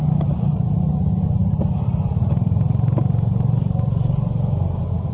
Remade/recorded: recorded